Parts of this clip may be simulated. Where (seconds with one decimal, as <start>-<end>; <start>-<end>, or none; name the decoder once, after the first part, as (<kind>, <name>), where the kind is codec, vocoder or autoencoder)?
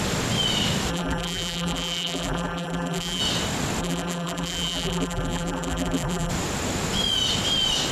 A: 0.9-3.2 (vocoder, BigVGAN v2); 3.8-6.3